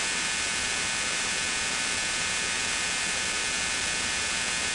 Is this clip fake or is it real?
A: real